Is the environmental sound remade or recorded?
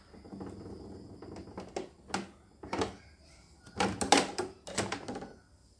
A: recorded